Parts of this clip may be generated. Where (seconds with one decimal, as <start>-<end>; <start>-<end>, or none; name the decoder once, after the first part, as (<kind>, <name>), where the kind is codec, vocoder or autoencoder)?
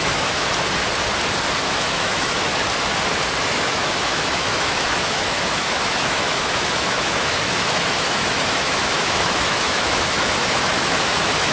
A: 0.0-0.5 (autoencoder, DAC-VAE); 1.6-2.5; 3.4-11.5